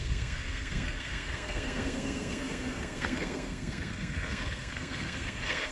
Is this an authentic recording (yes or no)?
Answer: no